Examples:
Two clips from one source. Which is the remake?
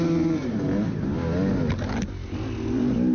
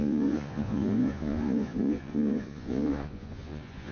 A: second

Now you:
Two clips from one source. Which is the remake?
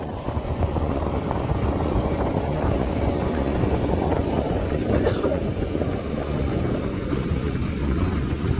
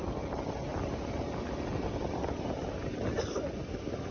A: first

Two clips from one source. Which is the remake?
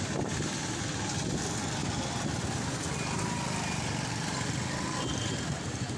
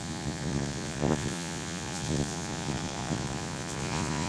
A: second